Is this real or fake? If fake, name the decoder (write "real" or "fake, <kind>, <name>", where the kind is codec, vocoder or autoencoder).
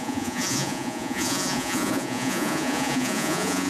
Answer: fake, vocoder, Vocos